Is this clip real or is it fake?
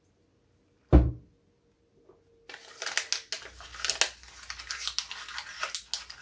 real